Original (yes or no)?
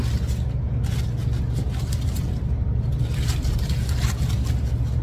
yes